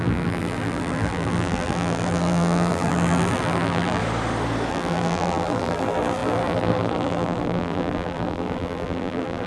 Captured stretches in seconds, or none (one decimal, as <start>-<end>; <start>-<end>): 4.0-4.7